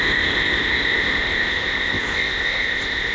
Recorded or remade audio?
remade